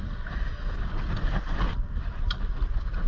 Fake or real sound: real